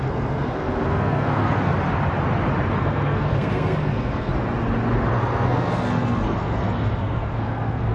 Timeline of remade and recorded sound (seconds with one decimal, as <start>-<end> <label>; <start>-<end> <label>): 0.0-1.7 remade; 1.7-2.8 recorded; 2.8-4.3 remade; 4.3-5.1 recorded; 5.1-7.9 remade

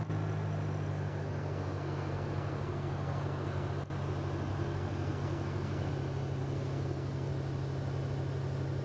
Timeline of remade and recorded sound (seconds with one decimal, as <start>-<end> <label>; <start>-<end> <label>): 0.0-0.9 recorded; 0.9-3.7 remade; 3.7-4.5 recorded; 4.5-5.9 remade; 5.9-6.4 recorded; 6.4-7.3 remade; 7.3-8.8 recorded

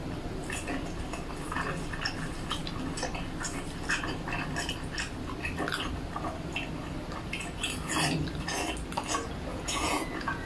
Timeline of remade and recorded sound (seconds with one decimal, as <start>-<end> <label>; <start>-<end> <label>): 0.0-9.5 recorded; 9.5-10.5 remade